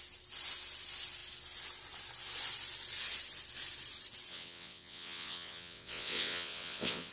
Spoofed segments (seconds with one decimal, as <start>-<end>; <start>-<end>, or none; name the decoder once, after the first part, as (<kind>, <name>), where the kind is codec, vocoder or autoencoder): 4.3-7.1 (vocoder, WaveNeXt)